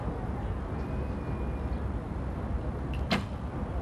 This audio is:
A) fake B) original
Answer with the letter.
B